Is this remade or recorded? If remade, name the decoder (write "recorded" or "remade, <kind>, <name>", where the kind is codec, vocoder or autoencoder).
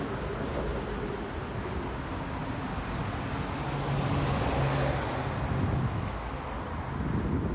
recorded